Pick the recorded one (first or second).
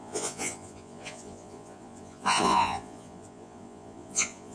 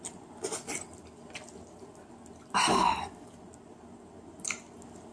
second